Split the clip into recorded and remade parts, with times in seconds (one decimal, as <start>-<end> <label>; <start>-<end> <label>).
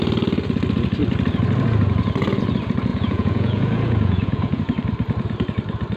0.0-2.9 recorded; 2.9-4.6 remade; 4.6-6.0 recorded